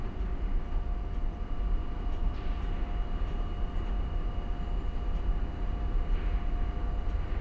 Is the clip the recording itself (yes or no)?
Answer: yes